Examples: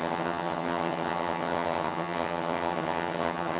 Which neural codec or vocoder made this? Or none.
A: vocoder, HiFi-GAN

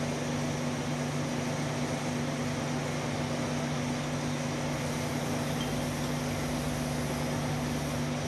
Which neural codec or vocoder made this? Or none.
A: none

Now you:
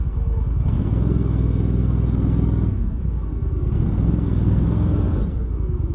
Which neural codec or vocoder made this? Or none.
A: codec, SNAC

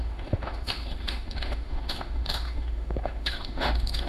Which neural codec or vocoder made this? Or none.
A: autoencoder, DAC-VAE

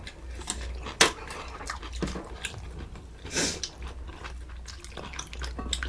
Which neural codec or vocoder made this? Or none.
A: none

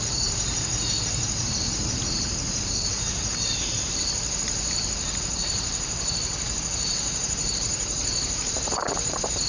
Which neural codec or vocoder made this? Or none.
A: vocoder, BigVGAN v2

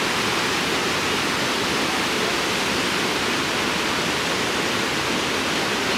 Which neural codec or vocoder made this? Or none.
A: none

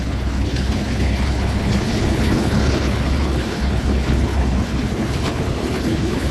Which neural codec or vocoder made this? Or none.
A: codec, HILCodec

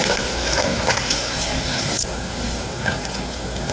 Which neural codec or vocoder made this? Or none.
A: codec, SNAC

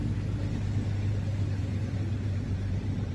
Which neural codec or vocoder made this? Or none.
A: none